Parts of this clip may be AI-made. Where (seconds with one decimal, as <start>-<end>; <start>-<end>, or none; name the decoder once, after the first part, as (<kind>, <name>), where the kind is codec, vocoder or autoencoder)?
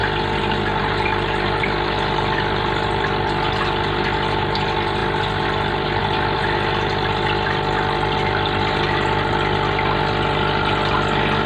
0.0-5.0 (vocoder, BigVGAN v2); 6.0-11.5